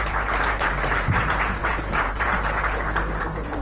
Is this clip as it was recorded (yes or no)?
no